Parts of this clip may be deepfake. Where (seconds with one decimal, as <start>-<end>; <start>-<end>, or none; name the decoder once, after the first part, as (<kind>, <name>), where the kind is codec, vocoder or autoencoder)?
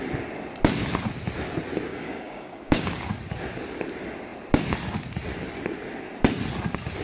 1.9-3.1 (codec, DAC)